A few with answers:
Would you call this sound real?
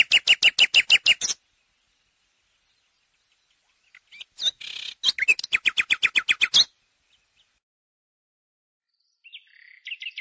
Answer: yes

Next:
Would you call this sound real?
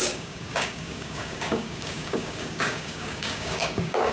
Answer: no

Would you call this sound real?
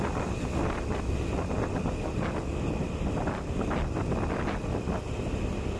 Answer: yes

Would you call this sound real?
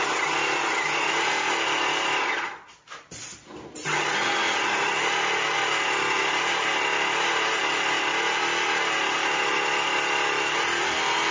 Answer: yes